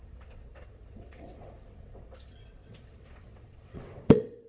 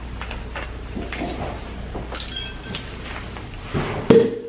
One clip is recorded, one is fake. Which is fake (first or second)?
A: first